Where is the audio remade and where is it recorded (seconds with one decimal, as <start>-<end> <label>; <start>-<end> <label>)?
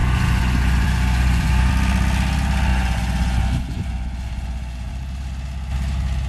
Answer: 0.0-1.7 remade; 1.7-2.7 recorded; 2.7-4.9 remade; 4.9-6.3 recorded